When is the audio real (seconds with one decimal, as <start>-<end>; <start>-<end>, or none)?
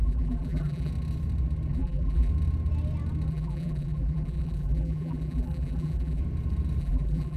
0.9-1.7; 2.3-3.3; 6.2-6.8